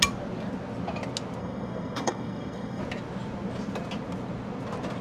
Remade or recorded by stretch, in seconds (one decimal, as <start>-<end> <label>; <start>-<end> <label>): 0.0-1.4 recorded; 1.4-2.8 remade; 2.8-5.0 recorded